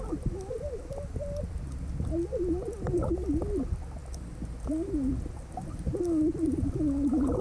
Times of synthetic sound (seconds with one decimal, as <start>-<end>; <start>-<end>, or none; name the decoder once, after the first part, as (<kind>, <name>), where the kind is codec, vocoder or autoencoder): none